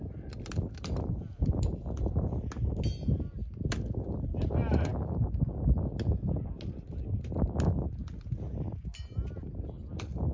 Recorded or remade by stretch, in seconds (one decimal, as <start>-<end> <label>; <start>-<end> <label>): 0.0-10.3 recorded